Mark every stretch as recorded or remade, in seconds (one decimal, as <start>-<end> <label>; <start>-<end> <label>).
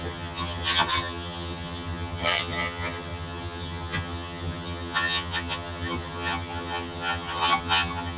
0.0-8.2 remade